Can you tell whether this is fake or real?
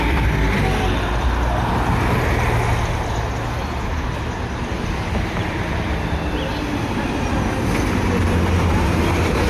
real